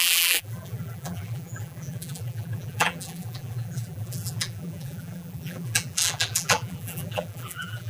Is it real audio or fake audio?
fake